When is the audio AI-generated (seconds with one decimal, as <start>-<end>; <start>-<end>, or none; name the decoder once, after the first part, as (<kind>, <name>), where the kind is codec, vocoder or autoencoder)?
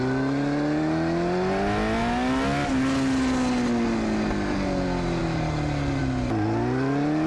none